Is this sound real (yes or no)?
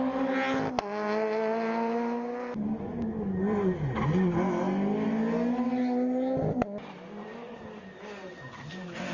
yes